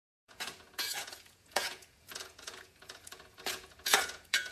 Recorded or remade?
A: remade